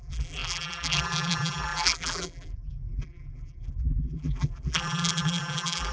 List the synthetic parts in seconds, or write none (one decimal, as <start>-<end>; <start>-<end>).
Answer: 0.0-5.9